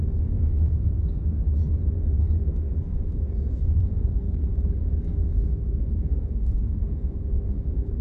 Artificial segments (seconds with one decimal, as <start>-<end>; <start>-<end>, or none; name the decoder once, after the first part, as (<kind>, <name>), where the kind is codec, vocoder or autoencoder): 0.0-1.4 (codec, SNAC); 2.0-4.4; 5.0-8.0